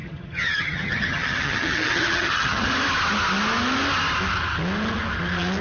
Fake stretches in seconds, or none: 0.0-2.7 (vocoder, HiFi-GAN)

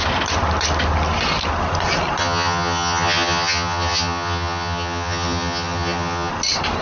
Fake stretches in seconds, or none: 2.2-6.3 (vocoder, HiFi-GAN)

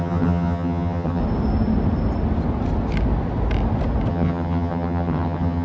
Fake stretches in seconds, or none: 0.0-1.2 (vocoder, HiFi-GAN); 4.1-5.6

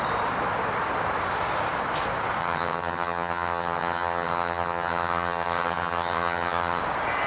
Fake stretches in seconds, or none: 2.4-6.8 (vocoder, HiFi-GAN)

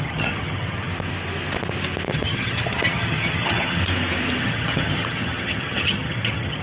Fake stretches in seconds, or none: 0.0-0.9 (vocoder, HiFi-GAN); 2.1-3.8; 4.4-6.6